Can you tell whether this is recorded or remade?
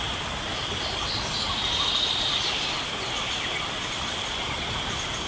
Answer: recorded